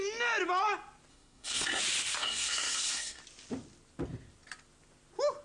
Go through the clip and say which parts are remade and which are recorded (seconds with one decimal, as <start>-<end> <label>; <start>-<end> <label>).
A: 0.0-1.1 recorded; 1.1-1.8 remade; 1.8-2.2 recorded; 2.2-3.2 remade; 3.2-5.4 recorded